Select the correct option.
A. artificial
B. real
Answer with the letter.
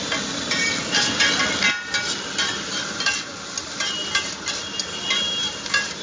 B